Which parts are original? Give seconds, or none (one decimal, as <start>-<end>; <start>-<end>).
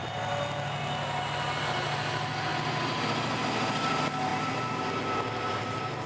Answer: 0.0-6.1